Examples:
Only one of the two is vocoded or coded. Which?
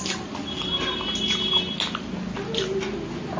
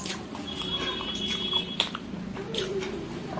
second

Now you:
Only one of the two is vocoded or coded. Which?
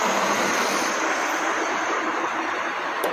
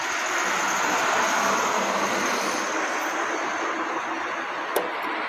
first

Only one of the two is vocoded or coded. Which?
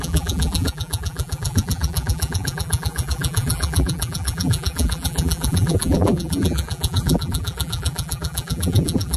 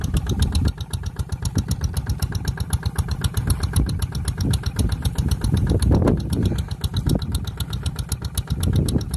first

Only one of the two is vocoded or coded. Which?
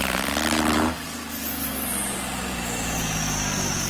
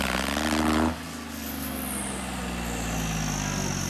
first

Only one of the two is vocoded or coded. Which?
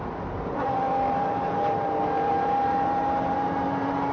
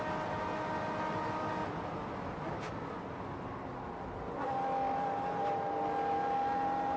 first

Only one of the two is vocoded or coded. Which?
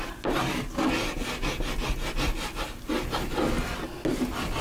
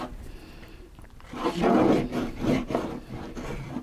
second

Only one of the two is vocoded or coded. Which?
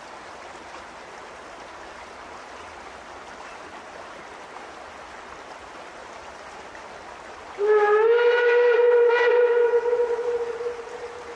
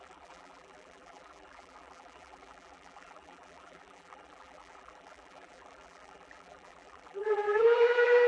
second